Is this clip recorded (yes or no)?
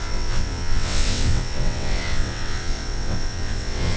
no